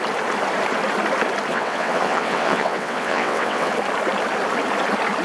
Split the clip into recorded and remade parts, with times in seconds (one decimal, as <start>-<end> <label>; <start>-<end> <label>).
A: 0.0-1.5 recorded; 1.5-3.7 remade; 3.7-5.2 recorded